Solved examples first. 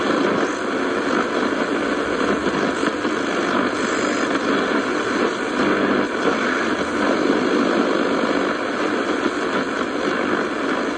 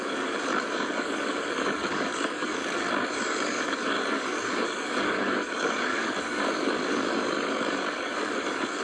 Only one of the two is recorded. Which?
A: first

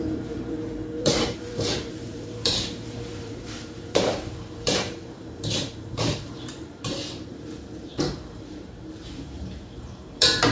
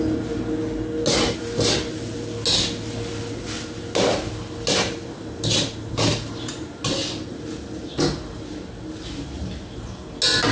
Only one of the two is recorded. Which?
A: second